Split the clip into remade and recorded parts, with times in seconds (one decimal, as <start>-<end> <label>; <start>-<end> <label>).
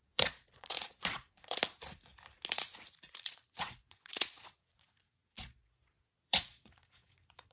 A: 0.0-1.6 remade; 1.6-3.1 recorded; 3.1-7.5 remade